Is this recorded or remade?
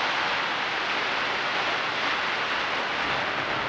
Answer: recorded